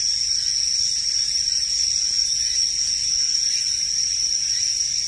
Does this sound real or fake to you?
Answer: real